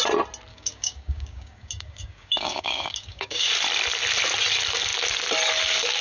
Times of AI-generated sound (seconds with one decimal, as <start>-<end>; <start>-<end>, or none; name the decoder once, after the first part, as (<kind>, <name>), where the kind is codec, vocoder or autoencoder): 0.5-3.5 (codec, DAC)